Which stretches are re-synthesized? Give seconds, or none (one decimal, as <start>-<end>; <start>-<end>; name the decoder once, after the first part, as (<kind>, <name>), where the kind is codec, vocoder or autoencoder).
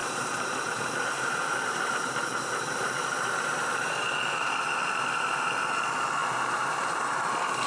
0.0-3.7 (vocoder, BigVGAN v2); 6.2-7.0